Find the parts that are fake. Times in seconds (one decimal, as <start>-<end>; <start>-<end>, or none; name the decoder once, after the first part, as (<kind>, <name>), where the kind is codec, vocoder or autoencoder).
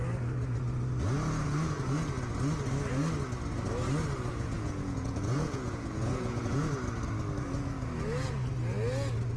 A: 4.3-6.7 (vocoder, Vocos)